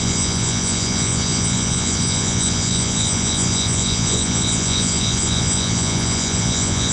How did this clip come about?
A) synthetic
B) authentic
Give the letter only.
A